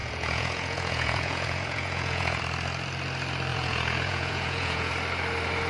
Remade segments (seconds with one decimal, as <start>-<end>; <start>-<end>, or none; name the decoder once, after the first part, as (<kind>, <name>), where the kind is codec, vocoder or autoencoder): 0.0-2.4 (vocoder, Vocos); 3.5-4.9